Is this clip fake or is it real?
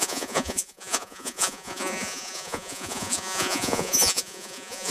fake